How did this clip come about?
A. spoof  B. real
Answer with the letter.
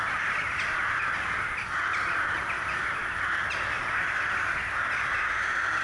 B